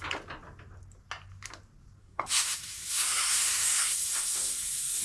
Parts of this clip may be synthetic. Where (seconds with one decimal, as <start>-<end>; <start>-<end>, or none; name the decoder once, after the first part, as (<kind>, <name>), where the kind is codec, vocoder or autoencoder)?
2.0-5.0 (codec, SNAC)